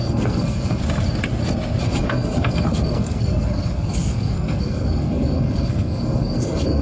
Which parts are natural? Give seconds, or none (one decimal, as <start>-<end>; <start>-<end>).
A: 0.8-1.8